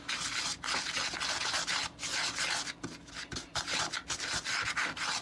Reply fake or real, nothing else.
real